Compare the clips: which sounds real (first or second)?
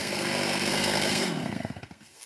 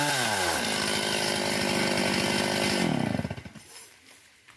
second